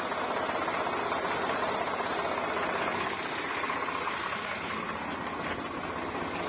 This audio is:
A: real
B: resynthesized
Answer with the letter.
A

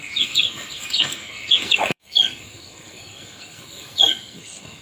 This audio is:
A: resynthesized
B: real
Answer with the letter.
A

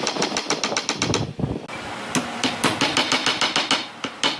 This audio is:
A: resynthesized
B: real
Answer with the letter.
B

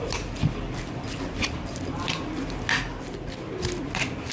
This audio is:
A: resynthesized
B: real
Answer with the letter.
B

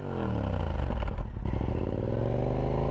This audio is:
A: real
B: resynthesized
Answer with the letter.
A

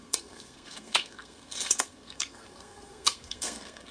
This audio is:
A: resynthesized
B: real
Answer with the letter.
A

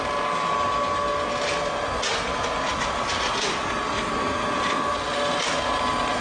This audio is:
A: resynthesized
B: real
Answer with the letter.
B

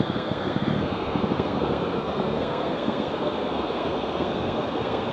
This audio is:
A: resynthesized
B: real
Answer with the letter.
A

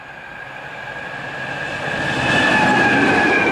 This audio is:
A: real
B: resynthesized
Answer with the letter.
A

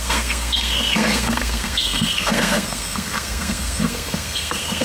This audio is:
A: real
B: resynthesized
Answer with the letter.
B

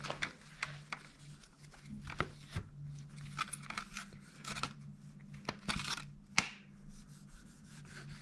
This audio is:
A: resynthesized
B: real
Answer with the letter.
B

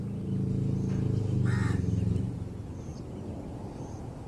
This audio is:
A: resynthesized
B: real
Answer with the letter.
B